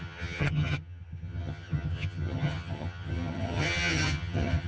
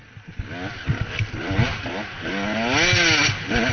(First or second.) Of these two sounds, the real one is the second